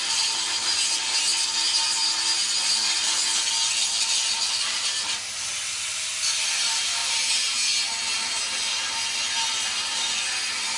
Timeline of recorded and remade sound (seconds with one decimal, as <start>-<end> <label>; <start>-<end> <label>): 0.0-10.8 recorded